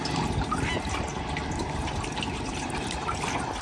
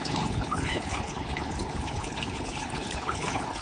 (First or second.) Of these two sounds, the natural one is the first